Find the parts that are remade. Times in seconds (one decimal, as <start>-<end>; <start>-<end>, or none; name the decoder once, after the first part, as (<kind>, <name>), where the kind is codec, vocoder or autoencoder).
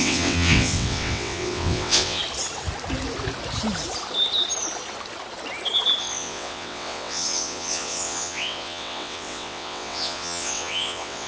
0.0-2.2 (vocoder, WaveNeXt); 6.0-11.3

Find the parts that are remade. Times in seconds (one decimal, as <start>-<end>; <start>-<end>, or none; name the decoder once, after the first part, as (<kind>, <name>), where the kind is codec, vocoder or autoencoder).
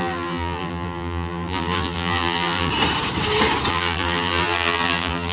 0.0-2.7 (vocoder, BigVGAN v2); 3.7-5.3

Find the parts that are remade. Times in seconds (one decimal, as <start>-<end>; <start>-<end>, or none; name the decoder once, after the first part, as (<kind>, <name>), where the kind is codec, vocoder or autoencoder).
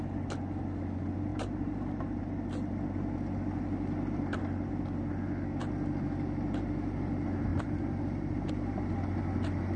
1.3-2.2 (vocoder, BigVGAN v2); 7.5-8.5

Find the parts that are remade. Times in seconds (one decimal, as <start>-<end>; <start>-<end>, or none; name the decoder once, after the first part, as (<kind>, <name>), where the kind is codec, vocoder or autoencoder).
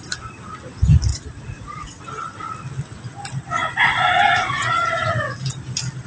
1.1-2.0 (vocoder, Vocos); 3.6-5.4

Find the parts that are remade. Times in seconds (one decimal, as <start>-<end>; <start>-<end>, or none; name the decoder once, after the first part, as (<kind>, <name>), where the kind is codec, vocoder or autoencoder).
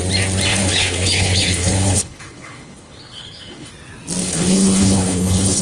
0.5-3.7 (codec, HILCodec); 4.2-5.6